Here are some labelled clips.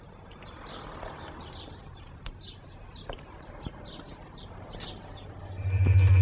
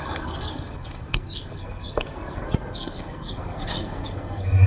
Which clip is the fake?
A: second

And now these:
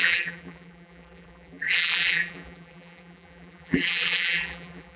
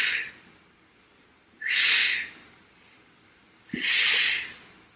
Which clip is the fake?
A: first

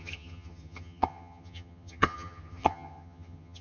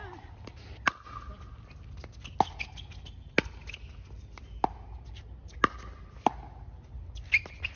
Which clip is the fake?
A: first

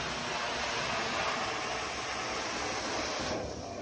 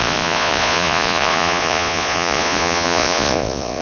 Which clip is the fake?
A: second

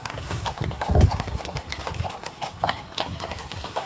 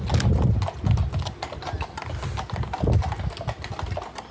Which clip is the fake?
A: first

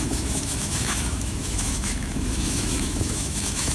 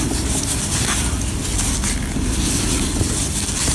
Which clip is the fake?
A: first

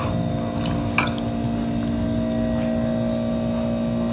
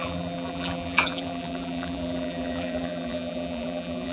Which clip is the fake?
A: second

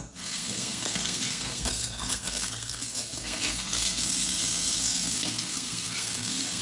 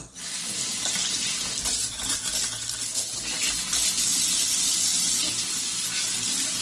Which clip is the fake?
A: first